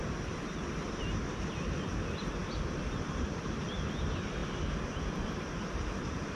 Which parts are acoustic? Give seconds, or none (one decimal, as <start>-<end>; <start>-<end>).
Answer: 0.0-6.4